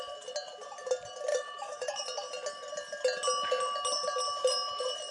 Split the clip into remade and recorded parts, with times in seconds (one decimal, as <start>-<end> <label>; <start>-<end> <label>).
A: 0.0-1.3 recorded; 1.3-1.9 remade; 1.9-5.1 recorded